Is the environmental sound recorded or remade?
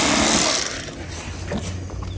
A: recorded